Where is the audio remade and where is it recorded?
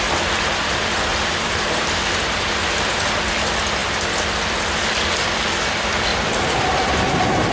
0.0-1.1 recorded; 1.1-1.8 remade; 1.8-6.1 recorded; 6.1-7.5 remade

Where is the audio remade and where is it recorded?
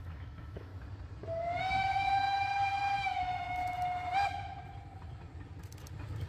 0.0-0.7 remade; 0.7-1.6 recorded; 1.6-3.6 remade; 3.6-6.3 recorded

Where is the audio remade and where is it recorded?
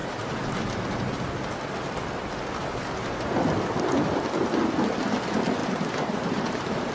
0.0-0.5 remade; 0.5-5.6 recorded; 5.6-6.9 remade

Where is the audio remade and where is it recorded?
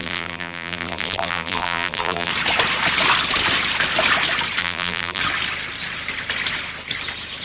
0.0-2.3 remade; 2.3-4.6 recorded; 4.6-5.2 remade; 5.2-7.4 recorded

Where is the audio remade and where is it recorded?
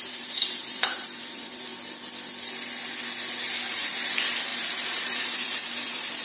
0.0-1.7 remade; 1.7-3.7 recorded; 3.7-6.2 remade